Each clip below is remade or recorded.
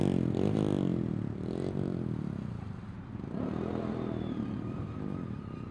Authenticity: recorded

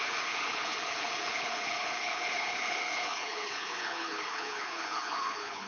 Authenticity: remade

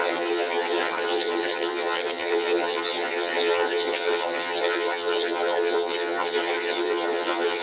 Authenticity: remade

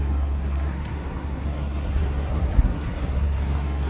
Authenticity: remade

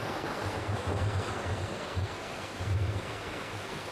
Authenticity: remade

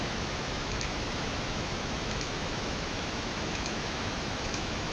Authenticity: remade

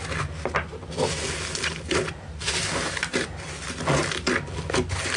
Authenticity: recorded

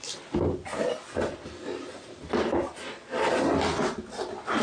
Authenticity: recorded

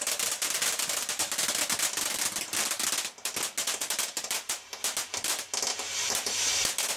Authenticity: recorded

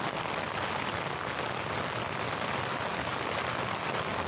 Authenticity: recorded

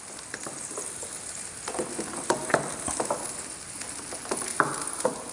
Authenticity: recorded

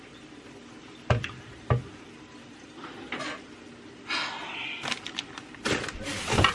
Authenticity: recorded